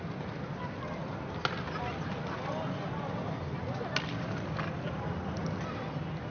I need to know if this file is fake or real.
real